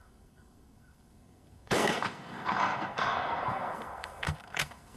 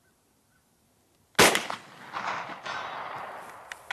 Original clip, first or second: second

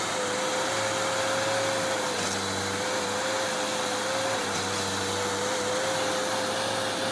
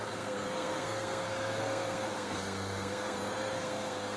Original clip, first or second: first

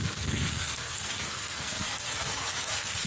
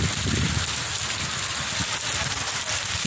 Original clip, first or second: second